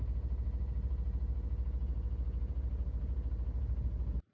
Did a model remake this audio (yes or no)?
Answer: no